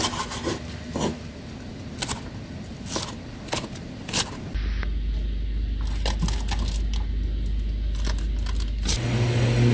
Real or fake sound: real